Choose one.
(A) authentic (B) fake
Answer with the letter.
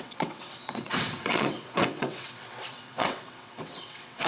B